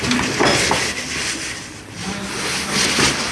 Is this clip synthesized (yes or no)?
no